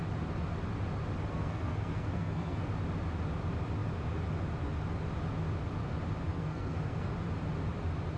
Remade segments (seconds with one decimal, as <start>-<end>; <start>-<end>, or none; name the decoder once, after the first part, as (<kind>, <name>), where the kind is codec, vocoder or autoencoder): 1.3-2.7 (codec, SNAC); 6.3-7.1